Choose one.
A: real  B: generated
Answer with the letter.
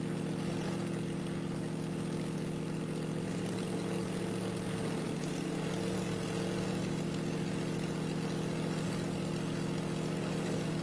A